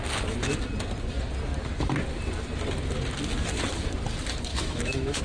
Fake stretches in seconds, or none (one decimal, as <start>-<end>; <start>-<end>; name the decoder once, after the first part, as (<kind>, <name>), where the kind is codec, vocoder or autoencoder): 4.5-5.2 (autoencoder, DAC-VAE)